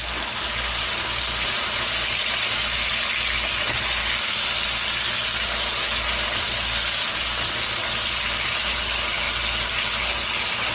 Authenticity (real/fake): real